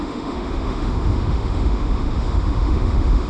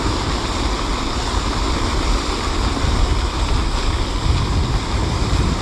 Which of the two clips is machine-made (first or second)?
first